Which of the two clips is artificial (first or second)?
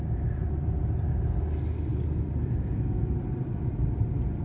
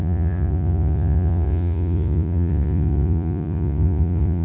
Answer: second